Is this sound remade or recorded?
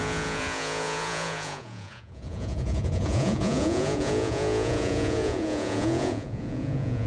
remade